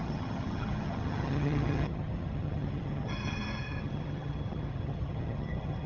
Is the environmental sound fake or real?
fake